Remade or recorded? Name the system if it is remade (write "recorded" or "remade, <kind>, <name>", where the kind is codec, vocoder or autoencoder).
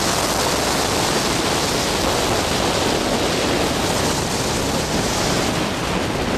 recorded